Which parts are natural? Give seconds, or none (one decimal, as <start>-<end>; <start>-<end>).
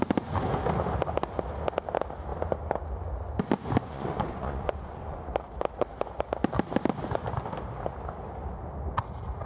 0.0-3.8; 5.3-9.5